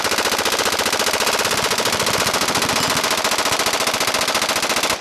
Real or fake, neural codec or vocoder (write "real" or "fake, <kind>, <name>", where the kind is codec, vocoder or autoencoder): real